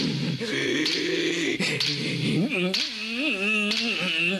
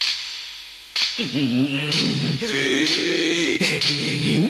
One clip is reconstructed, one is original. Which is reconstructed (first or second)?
second